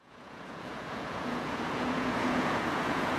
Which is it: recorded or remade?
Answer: remade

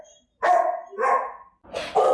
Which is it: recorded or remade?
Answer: recorded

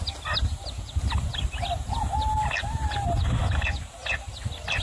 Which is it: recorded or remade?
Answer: recorded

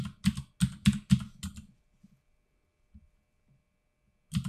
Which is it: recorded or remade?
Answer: recorded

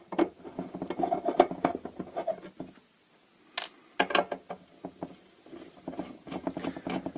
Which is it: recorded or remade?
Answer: recorded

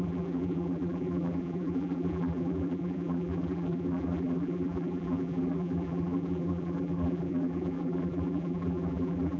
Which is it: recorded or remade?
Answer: remade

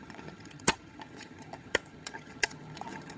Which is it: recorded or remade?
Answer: remade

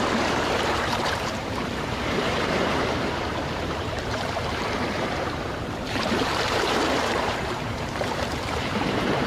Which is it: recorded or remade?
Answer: remade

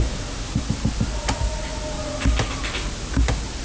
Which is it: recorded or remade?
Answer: recorded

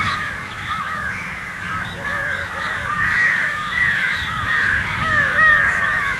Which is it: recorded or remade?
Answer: remade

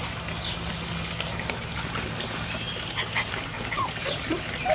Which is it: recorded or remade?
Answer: recorded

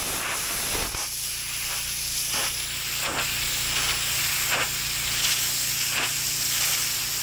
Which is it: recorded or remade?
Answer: recorded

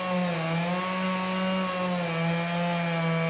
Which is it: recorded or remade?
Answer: recorded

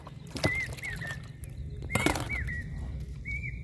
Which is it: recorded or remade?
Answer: recorded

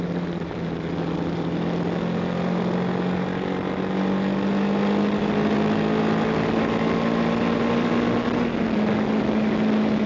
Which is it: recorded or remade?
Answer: recorded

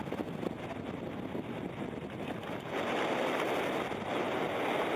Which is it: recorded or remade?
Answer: recorded